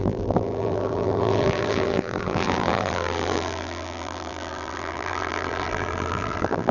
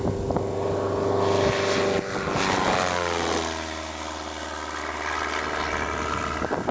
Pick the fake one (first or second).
first